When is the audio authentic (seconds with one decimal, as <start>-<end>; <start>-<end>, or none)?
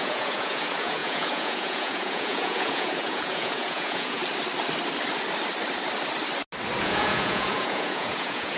4.2-6.8